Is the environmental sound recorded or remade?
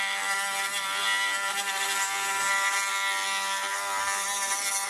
recorded